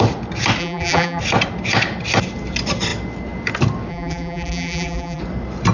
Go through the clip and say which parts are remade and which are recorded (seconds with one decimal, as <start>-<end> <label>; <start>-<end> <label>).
0.0-0.6 recorded; 0.6-1.2 remade; 1.2-3.9 recorded; 3.9-5.2 remade; 5.2-5.7 recorded